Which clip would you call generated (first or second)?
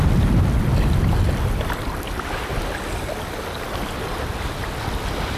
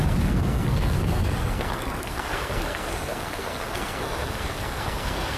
second